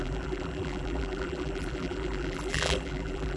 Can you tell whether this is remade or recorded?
remade